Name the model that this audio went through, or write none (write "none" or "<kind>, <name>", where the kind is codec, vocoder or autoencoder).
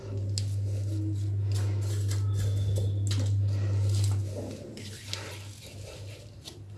none